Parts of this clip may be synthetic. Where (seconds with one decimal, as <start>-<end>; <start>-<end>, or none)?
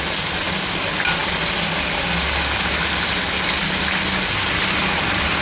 none